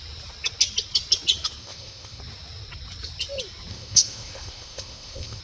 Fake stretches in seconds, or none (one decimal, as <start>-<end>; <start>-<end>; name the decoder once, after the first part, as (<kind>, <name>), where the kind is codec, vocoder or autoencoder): 1.6-2.2 (codec, ZipCodec); 3.7-5.4